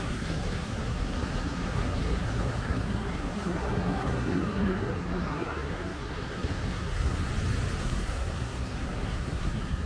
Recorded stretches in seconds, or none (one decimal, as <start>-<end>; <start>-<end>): 7.3-7.8